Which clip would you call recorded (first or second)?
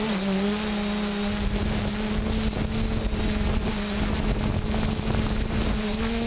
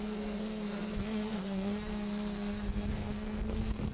first